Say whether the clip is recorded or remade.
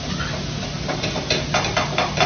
recorded